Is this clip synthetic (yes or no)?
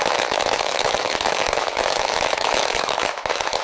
yes